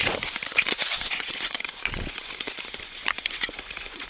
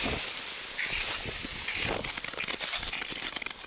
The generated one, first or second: first